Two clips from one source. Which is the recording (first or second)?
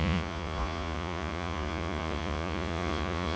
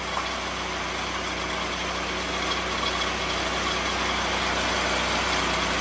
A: second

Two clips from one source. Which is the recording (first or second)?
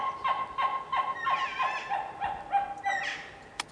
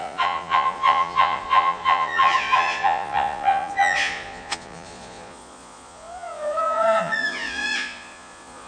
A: first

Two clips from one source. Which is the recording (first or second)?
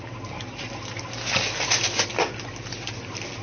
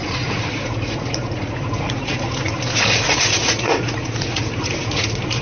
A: first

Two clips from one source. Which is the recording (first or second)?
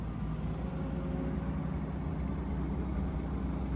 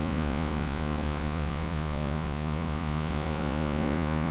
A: first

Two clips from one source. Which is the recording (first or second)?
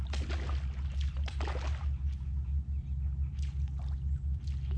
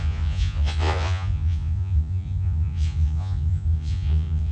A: first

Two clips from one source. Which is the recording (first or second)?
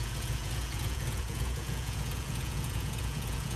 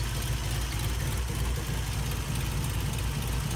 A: second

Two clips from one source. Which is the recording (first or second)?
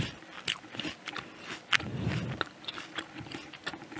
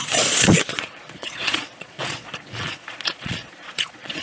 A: first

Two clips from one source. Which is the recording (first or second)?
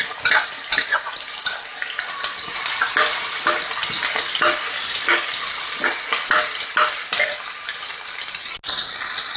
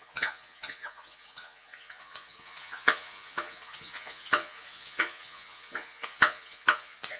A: first